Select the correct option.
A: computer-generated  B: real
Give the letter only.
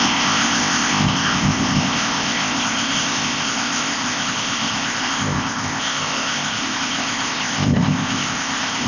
A